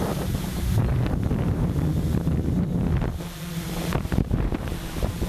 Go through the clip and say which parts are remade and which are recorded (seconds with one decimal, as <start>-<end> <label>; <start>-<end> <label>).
0.0-1.9 remade; 1.9-3.5 recorded; 3.5-5.3 remade